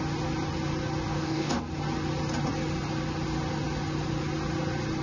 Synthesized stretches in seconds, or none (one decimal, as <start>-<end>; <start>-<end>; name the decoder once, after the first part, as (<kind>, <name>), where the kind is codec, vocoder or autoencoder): 1.1-1.6 (codec, DAC)